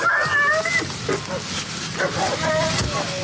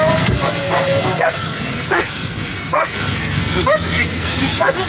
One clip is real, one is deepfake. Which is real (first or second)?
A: first